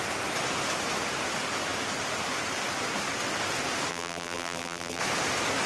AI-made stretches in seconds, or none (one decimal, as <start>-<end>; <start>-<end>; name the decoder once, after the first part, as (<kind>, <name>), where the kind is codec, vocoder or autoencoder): 3.9-5.0 (vocoder, BigVGAN v2)